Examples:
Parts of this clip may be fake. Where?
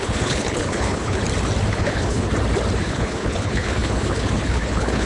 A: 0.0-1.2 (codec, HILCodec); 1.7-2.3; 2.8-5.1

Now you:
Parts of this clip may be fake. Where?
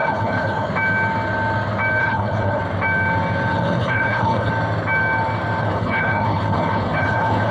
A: 0.0-0.7 (codec, HILCodec); 2.0-2.6; 3.5-4.5; 5.6-7.5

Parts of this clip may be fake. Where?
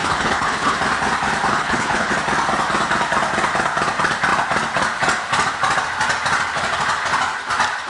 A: 0.0-0.8 (codec, HILCodec); 1.5-2.1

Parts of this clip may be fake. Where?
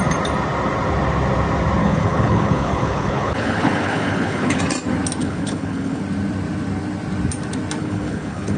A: 1.8-4.6 (codec, HILCodec); 5.2-6.0; 7.8-8.6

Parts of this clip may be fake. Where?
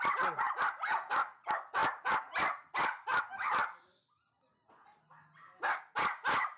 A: none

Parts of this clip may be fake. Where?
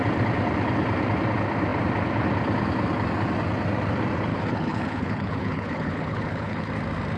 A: 4.3-6.7 (codec, HILCodec)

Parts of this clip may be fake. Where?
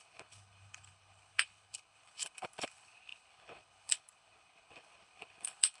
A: 0.0-5.8 (codec, HILCodec)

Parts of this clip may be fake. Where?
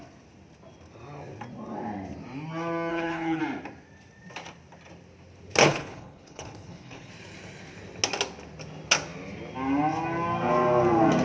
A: 2.9-3.4 (codec, HILCodec); 5.6-7.1